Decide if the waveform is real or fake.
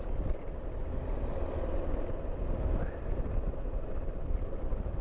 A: real